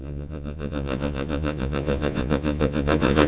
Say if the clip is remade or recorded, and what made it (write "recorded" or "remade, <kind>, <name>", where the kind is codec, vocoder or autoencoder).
remade, vocoder, Vocos